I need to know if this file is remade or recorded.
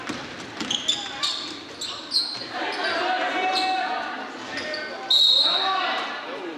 recorded